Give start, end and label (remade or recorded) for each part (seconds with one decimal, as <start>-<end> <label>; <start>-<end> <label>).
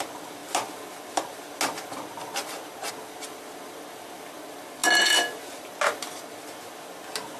0.0-7.4 recorded